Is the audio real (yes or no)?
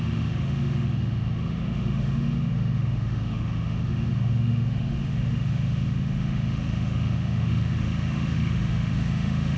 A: no